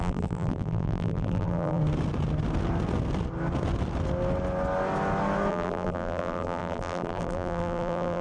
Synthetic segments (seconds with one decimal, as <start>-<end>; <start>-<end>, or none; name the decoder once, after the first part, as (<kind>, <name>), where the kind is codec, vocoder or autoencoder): 0.0-1.8 (vocoder, BigVGAN v2); 5.5-8.2